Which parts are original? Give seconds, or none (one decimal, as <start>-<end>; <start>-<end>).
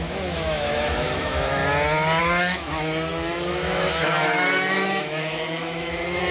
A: 1.6-2.2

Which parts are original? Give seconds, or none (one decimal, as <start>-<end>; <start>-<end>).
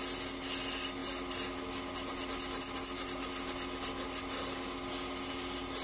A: 0.0-5.8